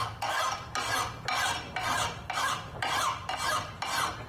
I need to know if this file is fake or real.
real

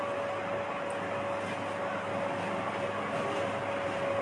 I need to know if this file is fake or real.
real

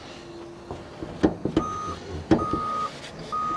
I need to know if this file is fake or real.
real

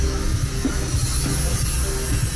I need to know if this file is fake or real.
real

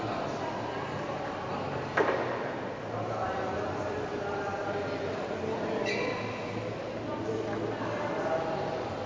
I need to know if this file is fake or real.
real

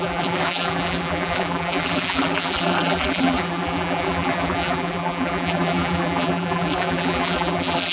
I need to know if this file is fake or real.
fake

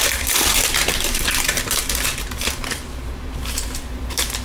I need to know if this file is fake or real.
fake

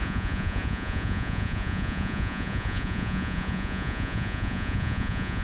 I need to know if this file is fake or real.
fake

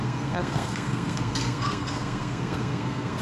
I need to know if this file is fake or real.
fake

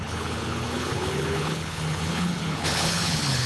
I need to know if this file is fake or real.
fake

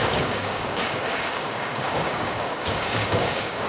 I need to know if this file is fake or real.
fake